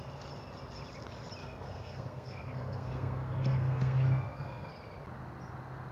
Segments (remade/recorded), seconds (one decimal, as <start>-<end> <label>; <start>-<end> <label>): 0.0-1.4 recorded; 1.4-4.7 remade; 4.7-5.9 recorded